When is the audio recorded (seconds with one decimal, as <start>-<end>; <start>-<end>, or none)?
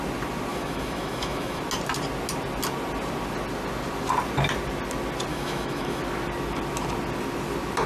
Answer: 0.0-0.5; 1.6-5.3; 6.0-7.9